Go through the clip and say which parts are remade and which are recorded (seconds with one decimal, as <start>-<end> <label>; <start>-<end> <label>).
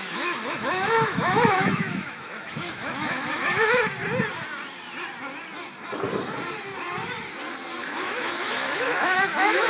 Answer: 0.0-4.0 remade; 4.0-7.8 recorded; 7.8-9.7 remade